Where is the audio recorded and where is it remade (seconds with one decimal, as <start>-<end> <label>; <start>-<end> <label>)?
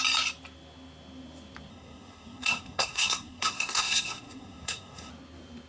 0.0-1.7 recorded; 1.7-5.1 remade; 5.1-5.7 recorded